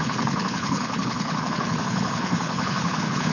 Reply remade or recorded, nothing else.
remade